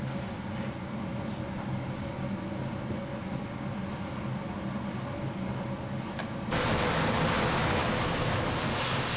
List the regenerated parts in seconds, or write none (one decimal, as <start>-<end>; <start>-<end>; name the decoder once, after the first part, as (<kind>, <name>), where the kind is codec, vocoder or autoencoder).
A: 7.8-8.5 (autoencoder, DAC-VAE)